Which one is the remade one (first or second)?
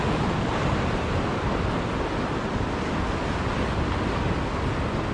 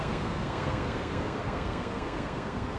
second